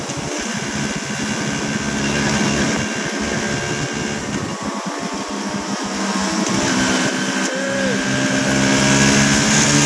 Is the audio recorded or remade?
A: recorded